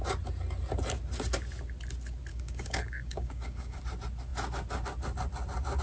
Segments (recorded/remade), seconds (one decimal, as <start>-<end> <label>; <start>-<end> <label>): 0.0-2.3 recorded; 2.3-3.8 remade; 3.8-5.8 recorded